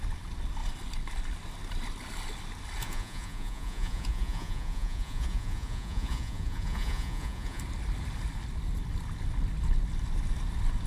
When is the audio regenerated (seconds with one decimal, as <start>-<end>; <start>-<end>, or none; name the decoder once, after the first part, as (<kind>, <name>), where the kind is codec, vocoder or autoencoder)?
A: 2.8-7.6 (vocoder, Vocos)